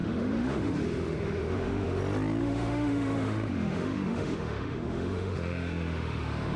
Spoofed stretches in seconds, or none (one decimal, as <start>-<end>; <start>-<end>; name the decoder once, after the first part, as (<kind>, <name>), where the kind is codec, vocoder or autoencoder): 0.0-2.0 (autoencoder, DAC-VAE); 2.4-6.6